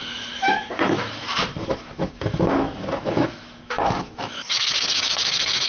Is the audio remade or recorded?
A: remade